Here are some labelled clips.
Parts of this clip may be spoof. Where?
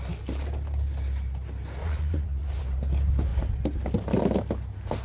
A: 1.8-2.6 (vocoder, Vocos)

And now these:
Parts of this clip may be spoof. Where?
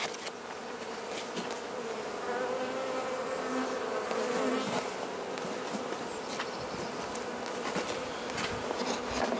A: none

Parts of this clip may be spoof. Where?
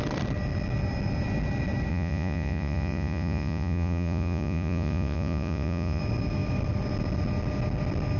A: 1.9-6.0 (vocoder, Vocos)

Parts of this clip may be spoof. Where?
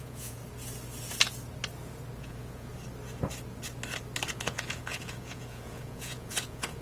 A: 0.0-0.4 (vocoder, Vocos); 2.2-2.7; 4.3-6.8